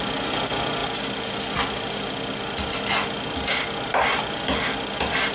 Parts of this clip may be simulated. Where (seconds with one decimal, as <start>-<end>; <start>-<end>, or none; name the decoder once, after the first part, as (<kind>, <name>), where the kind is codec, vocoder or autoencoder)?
none